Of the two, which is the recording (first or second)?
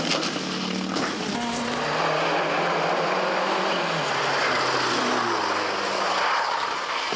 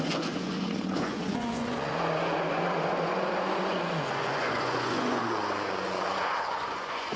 first